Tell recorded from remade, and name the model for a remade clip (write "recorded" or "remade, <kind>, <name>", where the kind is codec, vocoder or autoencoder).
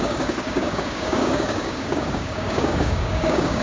remade, codec, DAC